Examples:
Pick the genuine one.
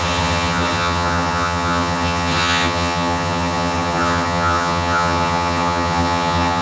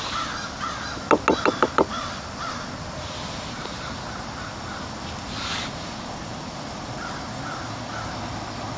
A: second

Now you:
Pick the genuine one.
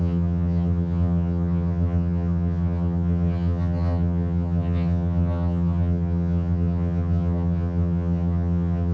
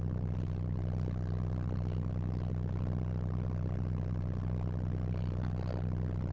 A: second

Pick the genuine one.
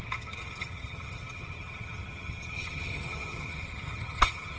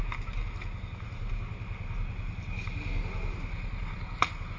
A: second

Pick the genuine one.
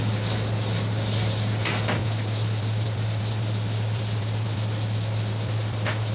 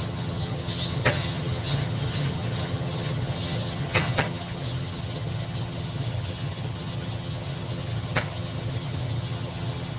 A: first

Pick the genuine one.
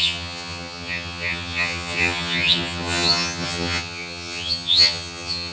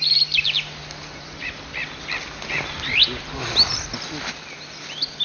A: second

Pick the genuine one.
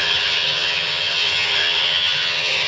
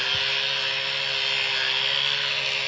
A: second